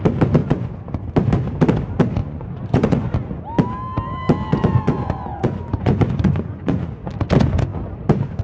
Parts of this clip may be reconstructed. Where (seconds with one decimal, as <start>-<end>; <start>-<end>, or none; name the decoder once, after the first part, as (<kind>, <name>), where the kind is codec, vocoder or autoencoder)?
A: 0.4-1.0 (vocoder, Vocos); 2.2-3.4; 4.5-7.1